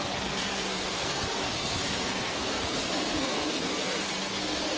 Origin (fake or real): fake